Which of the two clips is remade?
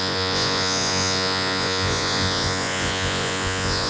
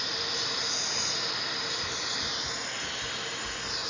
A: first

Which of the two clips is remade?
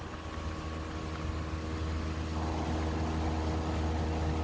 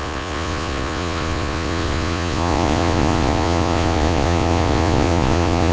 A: second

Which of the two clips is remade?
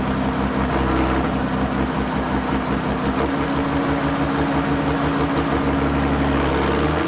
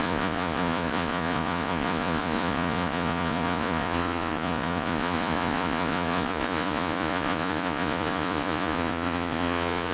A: second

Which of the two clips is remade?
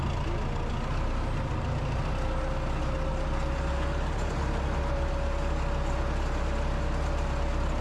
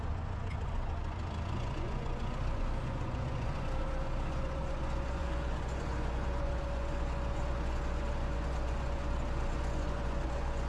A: second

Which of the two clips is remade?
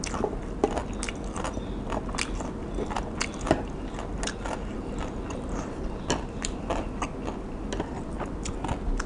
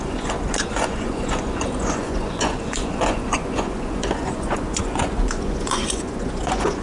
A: second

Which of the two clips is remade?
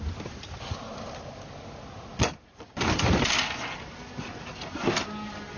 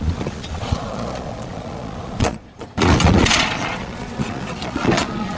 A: second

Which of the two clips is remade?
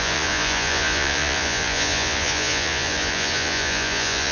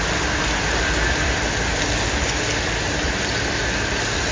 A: first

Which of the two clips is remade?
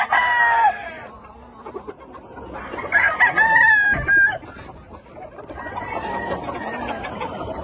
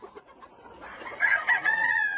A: second